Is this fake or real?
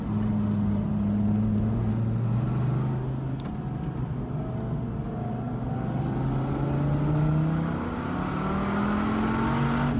real